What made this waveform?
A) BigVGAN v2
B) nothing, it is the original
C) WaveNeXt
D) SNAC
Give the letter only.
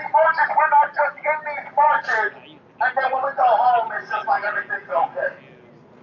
B